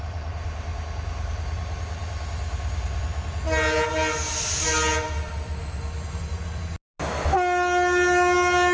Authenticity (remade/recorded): recorded